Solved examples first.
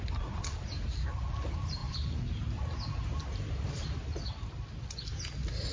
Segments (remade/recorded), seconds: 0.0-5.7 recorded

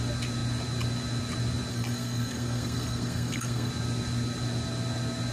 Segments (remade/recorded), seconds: 0.0-1.7 recorded; 1.7-3.7 remade; 3.7-5.3 recorded

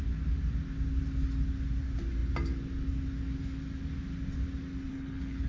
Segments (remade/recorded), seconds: 0.0-4.9 recorded; 4.9-5.5 remade

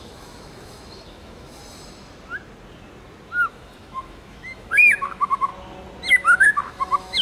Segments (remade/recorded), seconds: 0.0-1.6 remade; 1.6-3.5 recorded; 3.5-5.5 remade; 5.5-6.1 recorded; 6.1-7.2 remade

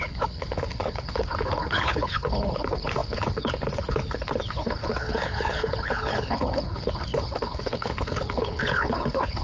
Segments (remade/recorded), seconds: 0.0-9.4 remade

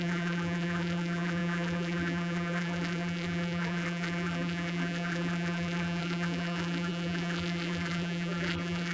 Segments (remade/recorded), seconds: 0.0-8.9 remade

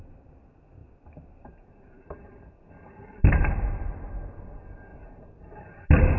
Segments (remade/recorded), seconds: 0.0-0.8 recorded; 0.8-4.4 remade; 4.4-4.9 recorded; 4.9-6.2 remade

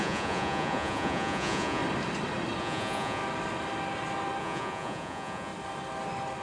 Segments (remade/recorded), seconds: 0.0-1.8 remade; 1.8-2.6 recorded; 2.6-3.2 remade; 3.2-4.4 recorded; 4.4-5.5 remade; 5.5-6.4 recorded